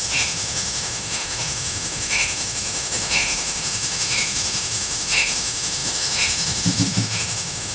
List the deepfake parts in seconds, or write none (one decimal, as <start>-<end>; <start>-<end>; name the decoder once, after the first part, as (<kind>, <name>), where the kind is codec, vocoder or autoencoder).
0.0-7.7 (autoencoder, DAC-VAE)